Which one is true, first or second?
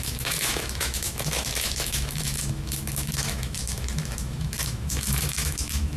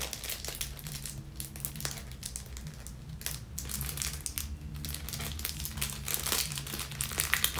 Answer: second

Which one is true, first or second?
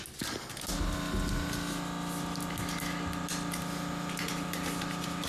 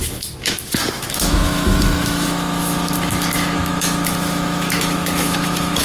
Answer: first